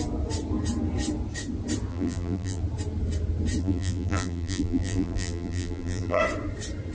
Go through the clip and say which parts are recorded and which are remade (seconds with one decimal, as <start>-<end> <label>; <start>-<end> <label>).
0.0-1.9 recorded; 1.9-2.6 remade; 2.6-3.6 recorded; 3.6-6.2 remade; 6.2-6.9 recorded